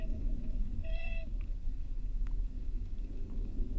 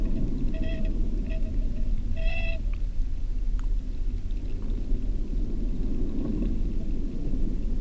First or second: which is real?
second